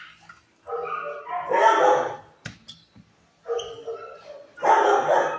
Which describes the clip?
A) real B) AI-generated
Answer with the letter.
A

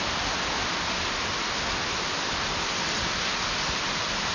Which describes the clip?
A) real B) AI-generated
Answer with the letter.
A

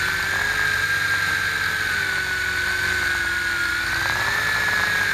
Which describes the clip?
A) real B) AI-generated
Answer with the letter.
A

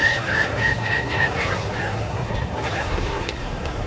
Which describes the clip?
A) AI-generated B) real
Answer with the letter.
A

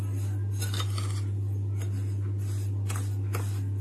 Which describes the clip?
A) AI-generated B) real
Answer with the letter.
B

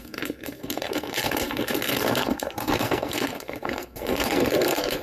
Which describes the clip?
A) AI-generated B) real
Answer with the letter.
A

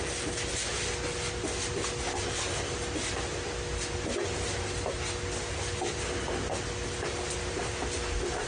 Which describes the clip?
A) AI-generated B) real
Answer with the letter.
B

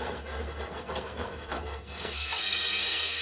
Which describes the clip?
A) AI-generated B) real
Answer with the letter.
A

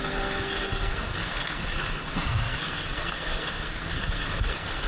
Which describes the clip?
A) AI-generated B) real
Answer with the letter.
A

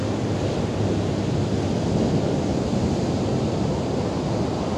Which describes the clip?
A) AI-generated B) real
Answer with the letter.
B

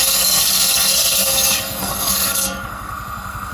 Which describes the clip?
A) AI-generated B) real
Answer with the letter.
A